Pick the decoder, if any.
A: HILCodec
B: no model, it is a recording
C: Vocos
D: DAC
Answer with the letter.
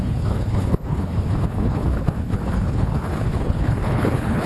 A